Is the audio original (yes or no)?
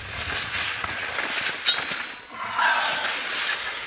yes